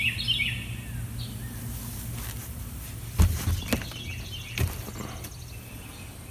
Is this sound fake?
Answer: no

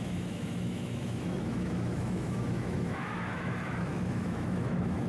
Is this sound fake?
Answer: yes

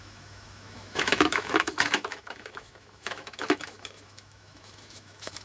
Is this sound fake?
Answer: yes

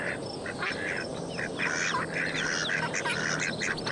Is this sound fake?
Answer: no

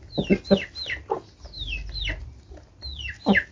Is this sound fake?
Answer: no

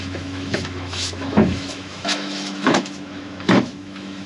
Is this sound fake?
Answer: yes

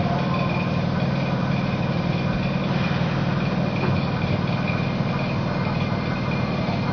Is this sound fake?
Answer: no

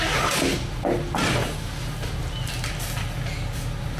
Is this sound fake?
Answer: no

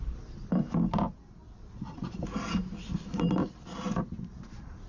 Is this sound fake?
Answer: no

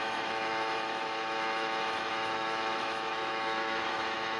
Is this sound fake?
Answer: yes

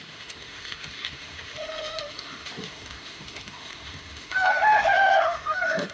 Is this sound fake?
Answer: yes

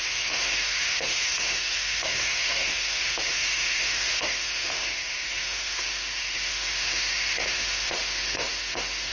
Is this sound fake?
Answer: yes